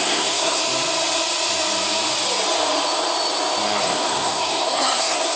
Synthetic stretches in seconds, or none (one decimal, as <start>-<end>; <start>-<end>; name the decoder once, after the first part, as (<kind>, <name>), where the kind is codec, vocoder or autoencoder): 0.0-0.6 (codec, SNAC); 3.8-5.4